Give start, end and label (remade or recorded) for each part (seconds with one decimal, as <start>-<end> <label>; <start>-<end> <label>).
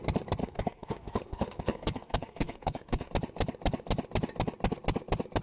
0.0-0.4 recorded; 0.4-3.1 remade; 3.1-5.4 recorded